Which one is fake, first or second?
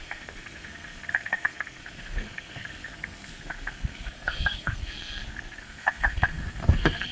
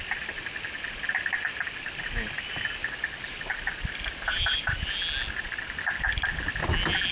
first